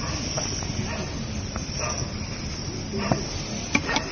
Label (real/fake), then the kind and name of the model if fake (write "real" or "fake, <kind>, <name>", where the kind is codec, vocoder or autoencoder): real